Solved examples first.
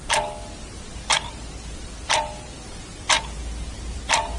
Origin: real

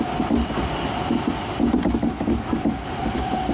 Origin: real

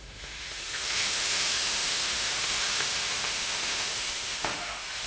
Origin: fake